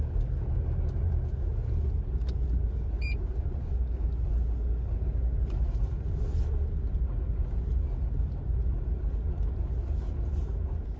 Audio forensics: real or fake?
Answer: real